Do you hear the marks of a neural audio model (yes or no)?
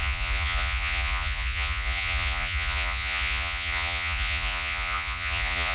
yes